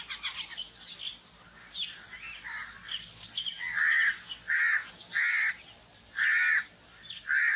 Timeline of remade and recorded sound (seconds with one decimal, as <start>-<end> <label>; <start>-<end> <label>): 0.0-7.6 recorded